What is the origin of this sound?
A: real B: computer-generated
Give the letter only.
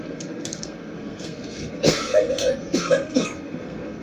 B